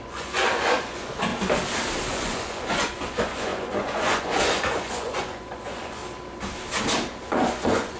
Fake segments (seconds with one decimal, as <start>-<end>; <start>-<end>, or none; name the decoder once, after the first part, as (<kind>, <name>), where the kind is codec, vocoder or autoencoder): 0.0-1.3 (vocoder, Vocos); 2.1-6.0; 7.2-8.0